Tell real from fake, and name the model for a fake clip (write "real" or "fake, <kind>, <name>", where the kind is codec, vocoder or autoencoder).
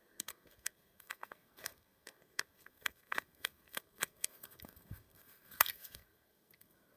fake, codec, SNAC